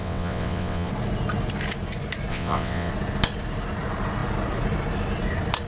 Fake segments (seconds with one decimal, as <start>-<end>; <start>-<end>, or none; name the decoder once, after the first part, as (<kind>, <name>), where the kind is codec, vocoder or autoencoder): 0.0-0.9 (vocoder, WaveNeXt); 2.3-2.9